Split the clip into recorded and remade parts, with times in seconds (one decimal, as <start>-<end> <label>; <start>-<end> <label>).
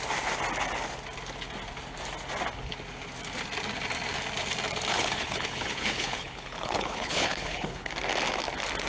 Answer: 0.0-4.9 recorded; 4.9-7.9 remade; 7.9-8.9 recorded